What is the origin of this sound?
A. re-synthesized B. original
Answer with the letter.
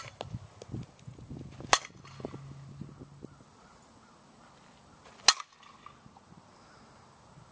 B